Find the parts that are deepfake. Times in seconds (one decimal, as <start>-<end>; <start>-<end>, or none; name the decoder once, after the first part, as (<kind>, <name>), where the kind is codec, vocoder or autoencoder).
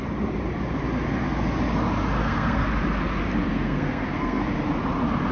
2.2-2.7 (codec, SNAC); 3.5-4.4